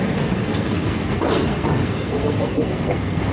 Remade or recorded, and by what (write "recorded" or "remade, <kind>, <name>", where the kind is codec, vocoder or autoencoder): remade, codec, SNAC